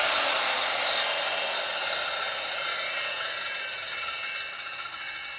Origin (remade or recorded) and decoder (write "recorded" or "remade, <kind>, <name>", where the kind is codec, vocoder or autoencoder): recorded